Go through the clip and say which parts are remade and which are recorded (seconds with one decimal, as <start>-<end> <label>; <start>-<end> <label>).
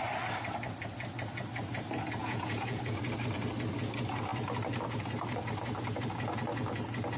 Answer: 0.0-2.2 recorded; 2.2-2.8 remade; 2.8-7.2 recorded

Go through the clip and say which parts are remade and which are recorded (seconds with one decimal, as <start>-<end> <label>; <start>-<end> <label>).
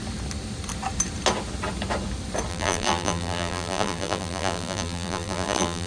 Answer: 0.0-2.5 recorded; 2.5-5.9 remade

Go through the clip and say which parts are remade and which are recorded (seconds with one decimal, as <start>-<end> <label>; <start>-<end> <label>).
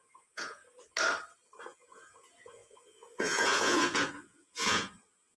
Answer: 0.0-0.6 remade; 0.6-1.6 recorded; 1.6-5.4 remade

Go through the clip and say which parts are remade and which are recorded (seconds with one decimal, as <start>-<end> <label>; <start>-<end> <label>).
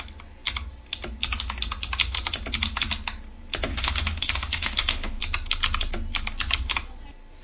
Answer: 0.0-3.7 recorded; 3.7-5.2 remade; 5.2-7.4 recorded